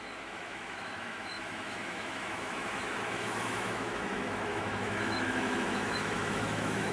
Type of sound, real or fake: fake